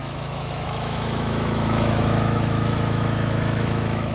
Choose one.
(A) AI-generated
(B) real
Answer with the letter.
A